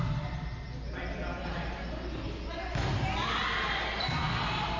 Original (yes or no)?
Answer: yes